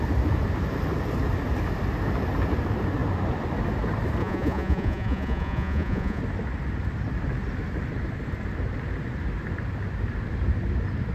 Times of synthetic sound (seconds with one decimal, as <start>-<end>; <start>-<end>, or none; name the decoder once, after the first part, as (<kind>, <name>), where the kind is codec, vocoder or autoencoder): 4.2-6.2 (vocoder, Vocos)